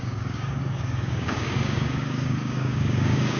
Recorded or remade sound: remade